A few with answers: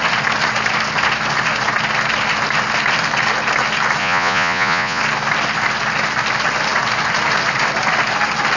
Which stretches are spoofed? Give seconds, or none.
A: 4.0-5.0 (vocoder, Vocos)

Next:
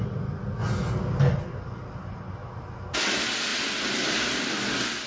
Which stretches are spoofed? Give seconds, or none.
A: none